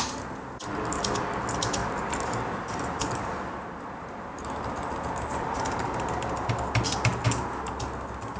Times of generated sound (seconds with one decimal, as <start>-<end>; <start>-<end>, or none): 1.8-6.5